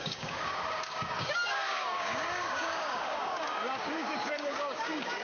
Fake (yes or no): yes